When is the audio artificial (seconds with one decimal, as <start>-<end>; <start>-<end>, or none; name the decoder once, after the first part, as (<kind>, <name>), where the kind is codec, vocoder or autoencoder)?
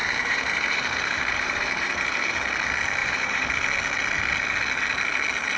0.0-2.4 (vocoder, BigVGAN v2); 3.0-3.5